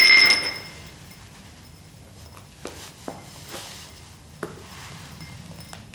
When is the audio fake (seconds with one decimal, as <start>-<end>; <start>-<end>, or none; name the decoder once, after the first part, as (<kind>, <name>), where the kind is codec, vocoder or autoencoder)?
none